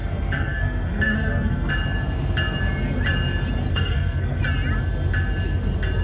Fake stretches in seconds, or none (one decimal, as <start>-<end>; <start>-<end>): 0.0-1.7; 3.7-4.4